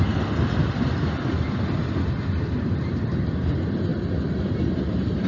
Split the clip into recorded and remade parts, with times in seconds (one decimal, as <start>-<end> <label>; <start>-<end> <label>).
0.0-3.9 recorded; 3.9-4.6 remade; 4.6-5.3 recorded